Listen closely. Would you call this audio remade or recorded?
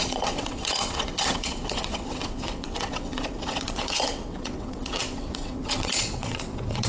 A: remade